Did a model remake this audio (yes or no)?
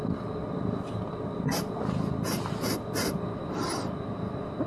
no